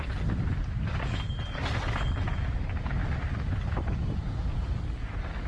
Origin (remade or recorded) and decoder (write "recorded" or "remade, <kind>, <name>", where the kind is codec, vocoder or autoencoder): recorded